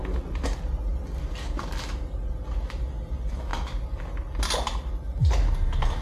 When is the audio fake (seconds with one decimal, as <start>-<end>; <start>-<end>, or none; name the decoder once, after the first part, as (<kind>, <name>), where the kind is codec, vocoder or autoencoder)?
none